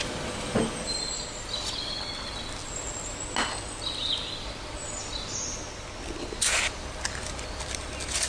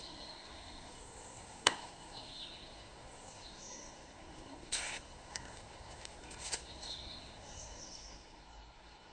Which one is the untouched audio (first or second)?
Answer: first